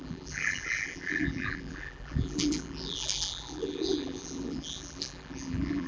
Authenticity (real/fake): fake